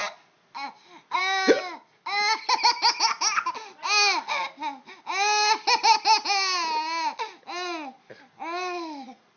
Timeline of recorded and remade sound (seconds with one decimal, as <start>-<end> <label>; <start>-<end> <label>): 0.0-9.4 recorded

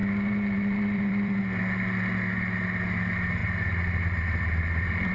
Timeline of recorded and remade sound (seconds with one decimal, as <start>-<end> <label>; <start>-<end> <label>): 0.0-1.4 remade; 1.4-3.4 recorded; 3.4-5.1 remade

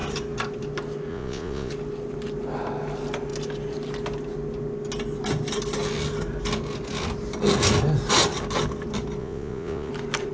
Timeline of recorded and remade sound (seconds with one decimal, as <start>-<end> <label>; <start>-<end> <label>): 0.0-1.1 recorded; 1.1-1.7 remade; 1.7-9.2 recorded; 9.2-9.9 remade; 9.9-10.3 recorded

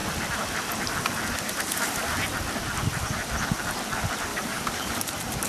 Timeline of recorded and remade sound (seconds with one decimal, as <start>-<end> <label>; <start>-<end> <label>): 0.0-4.3 recorded; 4.3-4.9 remade; 4.9-5.5 recorded

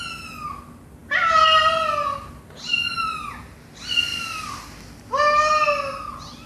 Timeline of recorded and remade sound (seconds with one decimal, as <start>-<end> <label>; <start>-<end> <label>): 0.0-1.0 recorded; 1.0-3.3 remade; 3.3-6.5 recorded

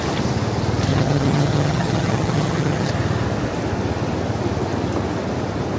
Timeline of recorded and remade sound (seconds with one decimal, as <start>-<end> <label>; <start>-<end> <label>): 0.0-0.9 recorded; 0.9-2.9 remade; 2.9-5.8 recorded

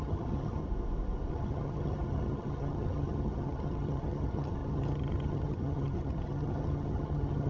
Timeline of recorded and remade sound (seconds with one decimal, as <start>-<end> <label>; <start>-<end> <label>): 0.0-0.6 remade; 0.6-1.3 recorded; 1.3-7.5 remade